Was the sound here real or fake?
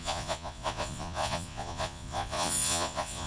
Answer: fake